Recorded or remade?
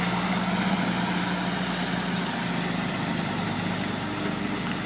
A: recorded